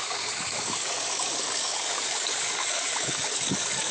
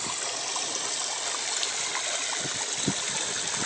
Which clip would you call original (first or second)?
second